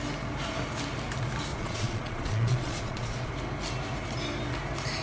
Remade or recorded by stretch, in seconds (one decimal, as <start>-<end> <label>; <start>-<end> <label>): 0.0-1.5 recorded; 1.5-3.3 remade; 3.3-5.0 recorded